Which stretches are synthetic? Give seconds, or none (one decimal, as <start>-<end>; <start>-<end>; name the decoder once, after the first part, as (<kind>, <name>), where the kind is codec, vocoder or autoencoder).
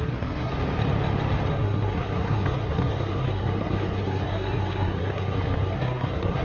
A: 0.0-0.5 (codec, SNAC); 1.5-6.4